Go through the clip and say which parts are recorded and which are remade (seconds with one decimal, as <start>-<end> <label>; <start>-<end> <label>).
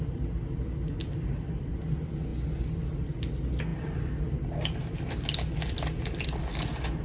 0.0-7.0 recorded